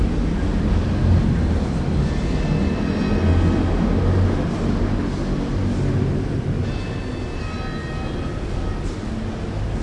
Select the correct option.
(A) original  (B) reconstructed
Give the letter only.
A